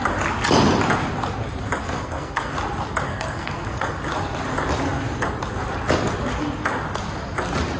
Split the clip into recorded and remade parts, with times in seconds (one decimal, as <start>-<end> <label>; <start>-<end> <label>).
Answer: 0.0-1.8 recorded; 1.8-2.5 remade; 2.5-3.1 recorded; 3.1-4.0 remade; 4.0-7.8 recorded